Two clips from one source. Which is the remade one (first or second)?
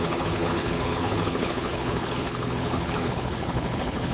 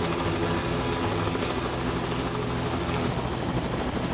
first